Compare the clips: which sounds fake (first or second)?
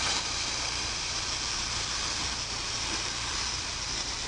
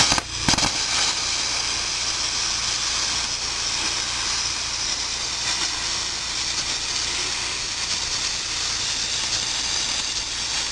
first